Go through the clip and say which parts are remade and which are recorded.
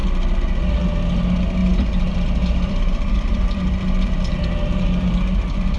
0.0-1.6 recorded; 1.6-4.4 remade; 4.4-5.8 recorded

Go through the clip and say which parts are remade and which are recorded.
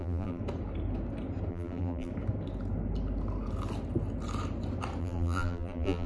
0.0-0.4 remade; 0.4-1.5 recorded; 1.5-2.1 remade; 2.1-5.0 recorded; 5.0-6.1 remade